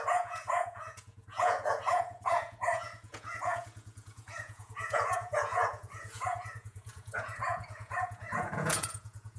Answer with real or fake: fake